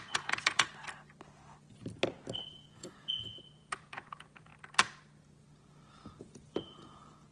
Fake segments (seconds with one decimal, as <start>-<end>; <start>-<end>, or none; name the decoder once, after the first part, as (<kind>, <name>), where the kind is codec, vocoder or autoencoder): 0.0-0.7 (vocoder, Vocos); 2.5-4.5; 5.9-7.3